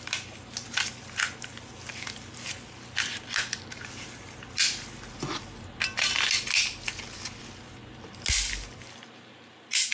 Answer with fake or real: real